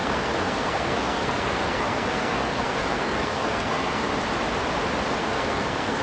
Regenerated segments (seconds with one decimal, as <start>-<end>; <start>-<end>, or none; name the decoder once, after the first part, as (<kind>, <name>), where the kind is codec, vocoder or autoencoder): 0.0-4.1 (codec, SNAC); 5.2-6.0